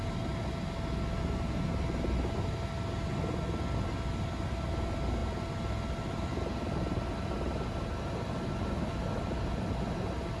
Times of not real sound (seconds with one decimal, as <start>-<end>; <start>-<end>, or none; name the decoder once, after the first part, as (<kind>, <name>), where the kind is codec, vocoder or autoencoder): none